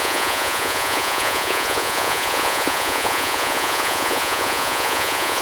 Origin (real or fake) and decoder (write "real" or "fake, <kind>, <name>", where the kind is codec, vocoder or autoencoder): fake, vocoder, Vocos